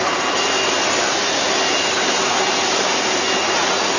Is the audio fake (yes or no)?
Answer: no